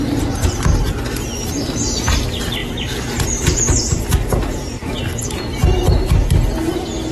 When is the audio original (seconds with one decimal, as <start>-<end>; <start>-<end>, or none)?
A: 0.0-2.6; 4.9-5.6; 6.3-7.1